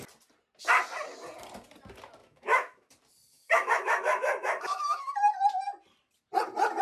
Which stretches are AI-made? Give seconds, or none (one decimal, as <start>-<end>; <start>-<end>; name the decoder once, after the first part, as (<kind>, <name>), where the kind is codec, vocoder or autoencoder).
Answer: 2.2-2.9 (autoencoder, DAC-VAE); 3.3-5.1